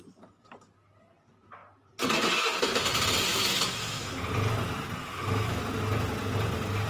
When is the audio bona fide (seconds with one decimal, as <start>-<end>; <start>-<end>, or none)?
0.0-3.3; 4.1-5.0; 5.6-6.9